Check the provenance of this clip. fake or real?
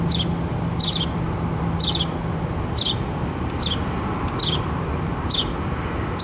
real